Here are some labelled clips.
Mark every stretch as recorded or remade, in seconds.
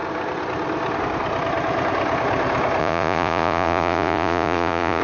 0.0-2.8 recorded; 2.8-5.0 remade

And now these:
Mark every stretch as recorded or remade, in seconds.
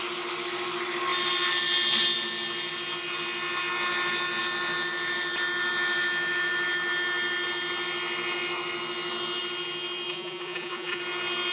0.0-10.1 recorded; 10.1-11.0 remade; 11.0-11.5 recorded